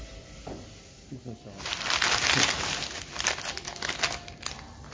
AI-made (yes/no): no